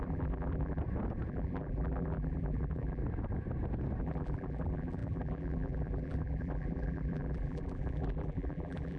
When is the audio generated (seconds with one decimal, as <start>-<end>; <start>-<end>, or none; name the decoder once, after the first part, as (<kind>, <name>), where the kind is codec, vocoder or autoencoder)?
0.0-0.8 (vocoder, BigVGAN v2); 1.3-3.0; 4.0-9.0